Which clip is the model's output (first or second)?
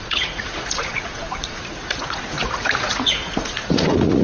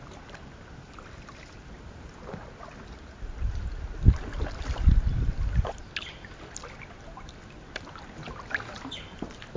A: first